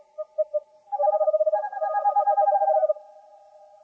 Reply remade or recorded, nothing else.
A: recorded